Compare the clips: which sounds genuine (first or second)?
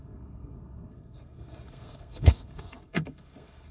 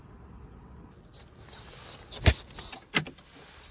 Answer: second